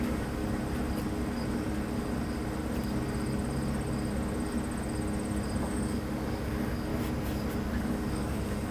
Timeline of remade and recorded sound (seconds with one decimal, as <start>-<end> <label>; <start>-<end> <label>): 0.0-0.4 remade; 0.4-5.6 recorded; 5.6-6.9 remade; 6.9-7.8 recorded; 7.8-8.7 remade